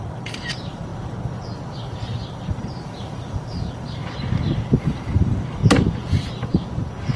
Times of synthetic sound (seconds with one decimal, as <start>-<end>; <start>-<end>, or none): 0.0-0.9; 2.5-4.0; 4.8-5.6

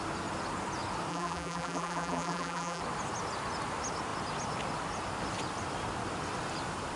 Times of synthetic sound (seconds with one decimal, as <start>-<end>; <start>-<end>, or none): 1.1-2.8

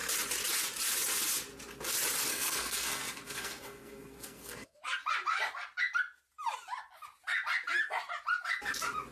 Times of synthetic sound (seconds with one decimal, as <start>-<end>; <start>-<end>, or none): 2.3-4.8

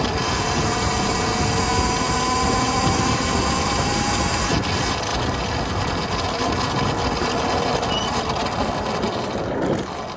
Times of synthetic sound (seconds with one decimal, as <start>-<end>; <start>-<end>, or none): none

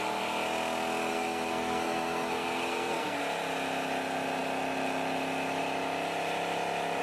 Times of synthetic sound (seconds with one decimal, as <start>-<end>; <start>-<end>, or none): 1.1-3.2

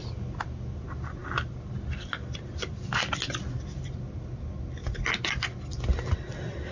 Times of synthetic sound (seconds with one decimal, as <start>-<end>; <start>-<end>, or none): none

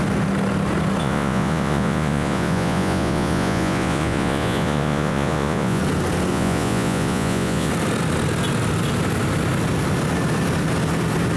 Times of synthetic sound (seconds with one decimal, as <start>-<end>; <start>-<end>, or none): 1.0-5.8; 6.3-7.7

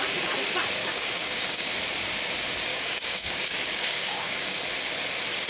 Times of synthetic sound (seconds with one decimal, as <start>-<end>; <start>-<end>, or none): 0.8-1.7; 2.7-4.6